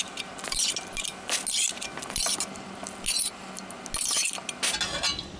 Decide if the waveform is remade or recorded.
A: recorded